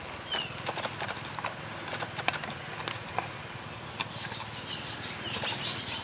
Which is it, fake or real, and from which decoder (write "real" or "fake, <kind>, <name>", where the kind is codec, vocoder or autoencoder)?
real